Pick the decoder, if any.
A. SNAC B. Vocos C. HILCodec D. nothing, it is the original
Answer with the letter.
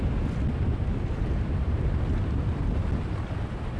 D